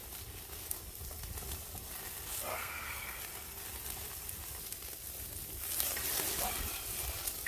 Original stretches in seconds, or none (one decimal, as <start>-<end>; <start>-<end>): 0.0-2.5; 3.2-7.5